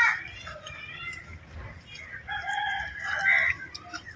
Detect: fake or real real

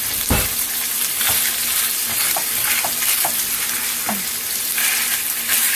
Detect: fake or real real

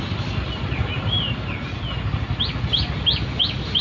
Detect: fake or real real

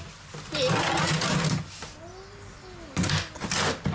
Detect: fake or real real